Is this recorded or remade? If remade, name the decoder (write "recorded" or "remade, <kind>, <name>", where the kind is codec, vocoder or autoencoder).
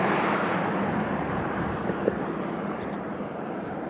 remade, vocoder, BigVGAN v2